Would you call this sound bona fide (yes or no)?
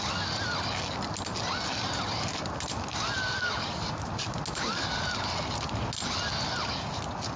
yes